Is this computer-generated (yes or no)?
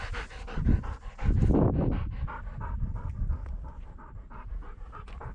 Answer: no